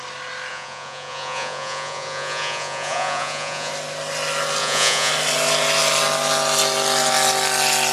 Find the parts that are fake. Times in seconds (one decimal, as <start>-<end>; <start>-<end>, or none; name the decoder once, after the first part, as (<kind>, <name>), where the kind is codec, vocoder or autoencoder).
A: 0.5-3.7 (vocoder, Vocos); 4.6-5.1